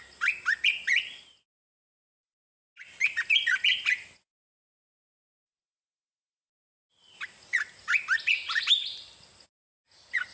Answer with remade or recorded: recorded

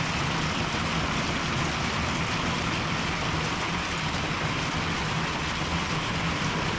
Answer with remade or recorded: recorded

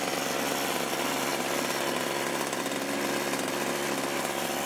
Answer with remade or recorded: recorded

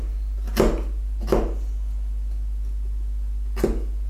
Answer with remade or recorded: recorded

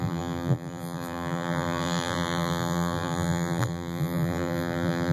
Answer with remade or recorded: remade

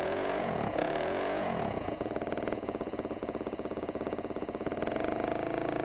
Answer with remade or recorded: remade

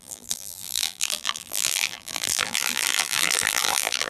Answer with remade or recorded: remade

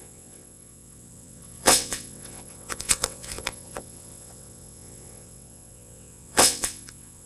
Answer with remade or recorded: remade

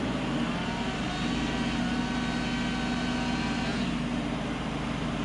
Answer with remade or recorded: recorded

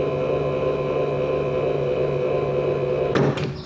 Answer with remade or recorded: recorded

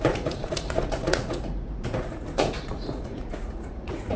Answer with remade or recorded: remade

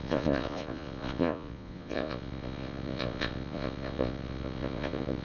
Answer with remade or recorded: remade